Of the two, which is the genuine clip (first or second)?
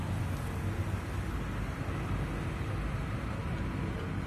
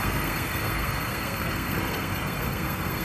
first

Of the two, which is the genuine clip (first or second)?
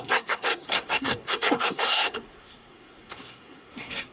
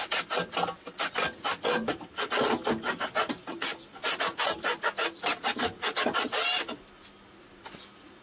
second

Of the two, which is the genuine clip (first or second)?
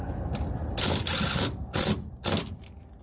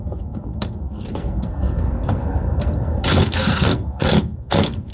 first